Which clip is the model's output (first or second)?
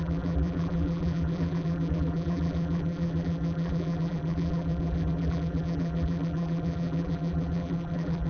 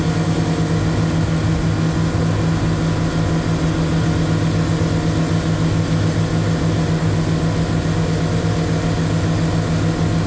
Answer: first